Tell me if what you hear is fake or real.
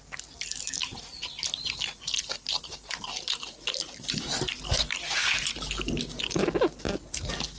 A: real